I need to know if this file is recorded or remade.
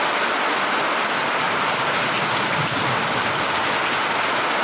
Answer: recorded